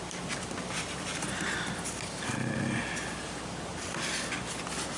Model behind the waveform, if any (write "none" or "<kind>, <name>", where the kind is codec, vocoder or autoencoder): none